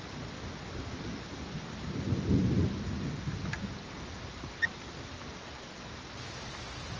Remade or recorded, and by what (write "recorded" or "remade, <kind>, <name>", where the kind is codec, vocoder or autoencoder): recorded